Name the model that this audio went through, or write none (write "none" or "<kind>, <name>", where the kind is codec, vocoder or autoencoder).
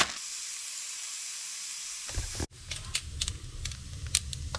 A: none